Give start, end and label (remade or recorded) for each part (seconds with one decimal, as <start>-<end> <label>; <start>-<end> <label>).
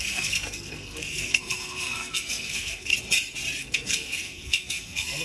0.0-2.9 remade; 2.9-3.6 recorded; 3.6-5.2 remade